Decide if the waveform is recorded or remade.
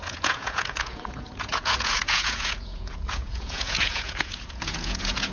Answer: remade